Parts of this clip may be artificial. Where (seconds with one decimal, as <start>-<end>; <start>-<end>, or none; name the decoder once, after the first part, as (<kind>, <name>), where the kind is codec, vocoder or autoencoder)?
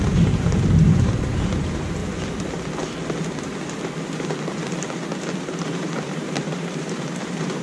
0.0-2.0 (vocoder, BigVGAN v2); 5.4-7.6